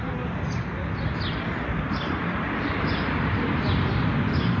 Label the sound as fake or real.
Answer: real